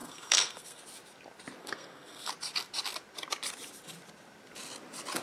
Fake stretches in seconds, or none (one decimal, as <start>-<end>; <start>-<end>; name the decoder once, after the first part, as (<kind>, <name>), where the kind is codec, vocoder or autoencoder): 0.0-0.8 (codec, SNAC); 1.6-2.3